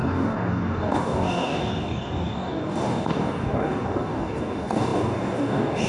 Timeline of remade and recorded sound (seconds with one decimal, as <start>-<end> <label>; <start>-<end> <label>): 0.0-5.9 remade